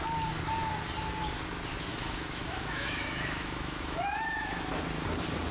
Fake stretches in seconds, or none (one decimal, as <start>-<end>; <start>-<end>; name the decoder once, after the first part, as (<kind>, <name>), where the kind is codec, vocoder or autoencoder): 1.9-4.7 (autoencoder, DAC-VAE)